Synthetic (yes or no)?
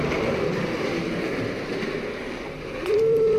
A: yes